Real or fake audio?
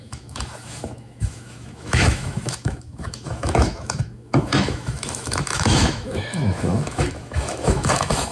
fake